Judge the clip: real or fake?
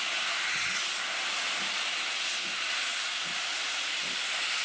real